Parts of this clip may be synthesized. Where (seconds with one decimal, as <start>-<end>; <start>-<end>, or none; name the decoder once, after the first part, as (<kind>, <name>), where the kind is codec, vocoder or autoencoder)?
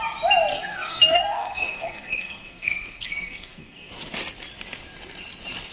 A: 0.5-3.9 (codec, SNAC)